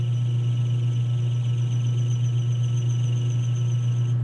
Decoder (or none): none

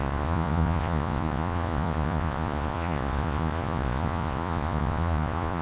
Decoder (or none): vocoder, Vocos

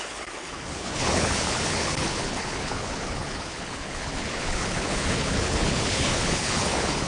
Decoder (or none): codec, HILCodec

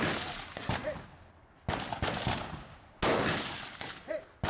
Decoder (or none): none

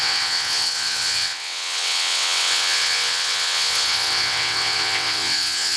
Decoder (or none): vocoder, WaveNeXt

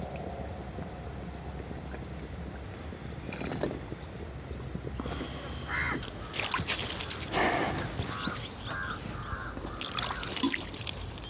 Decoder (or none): none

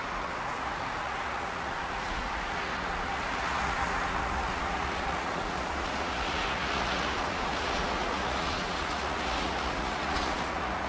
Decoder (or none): vocoder, Vocos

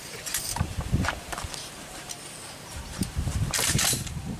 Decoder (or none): vocoder, BigVGAN v2